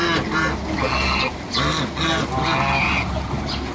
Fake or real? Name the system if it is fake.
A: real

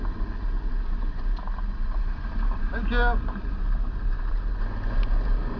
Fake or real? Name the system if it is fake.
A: real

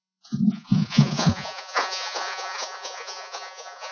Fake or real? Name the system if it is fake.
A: fake, vocoder, Vocos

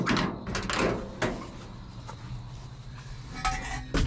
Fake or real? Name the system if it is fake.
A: real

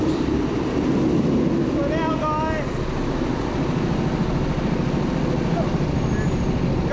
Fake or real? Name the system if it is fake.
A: real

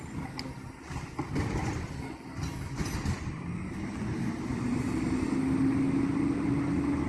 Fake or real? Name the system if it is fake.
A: real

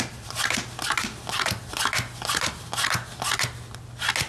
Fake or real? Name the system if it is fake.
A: real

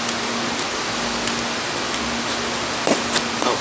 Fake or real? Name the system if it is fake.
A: real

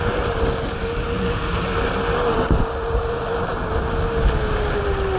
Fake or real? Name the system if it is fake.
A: real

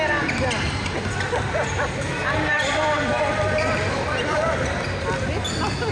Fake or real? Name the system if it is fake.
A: real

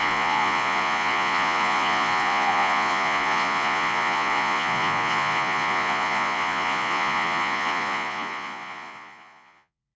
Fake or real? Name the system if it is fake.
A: fake, vocoder, Vocos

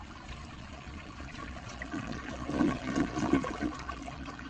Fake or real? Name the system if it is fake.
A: fake, vocoder, Vocos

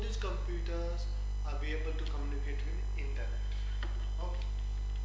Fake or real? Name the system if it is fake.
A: real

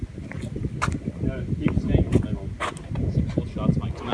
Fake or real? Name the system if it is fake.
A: real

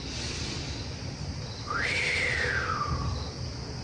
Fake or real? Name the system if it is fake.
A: real